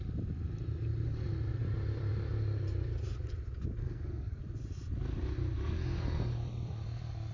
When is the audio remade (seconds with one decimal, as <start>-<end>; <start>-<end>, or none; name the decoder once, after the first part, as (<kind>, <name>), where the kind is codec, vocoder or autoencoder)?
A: 3.8-4.4 (codec, SNAC)